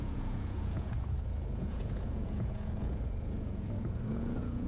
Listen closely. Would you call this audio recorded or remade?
remade